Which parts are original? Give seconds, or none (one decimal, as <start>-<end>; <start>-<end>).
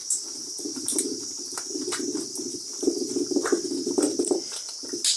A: 3.1-5.2